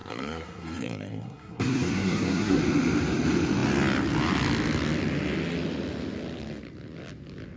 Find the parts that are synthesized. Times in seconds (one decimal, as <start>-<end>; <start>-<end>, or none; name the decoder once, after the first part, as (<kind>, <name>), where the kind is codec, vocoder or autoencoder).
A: 0.0-2.6 (codec, SNAC)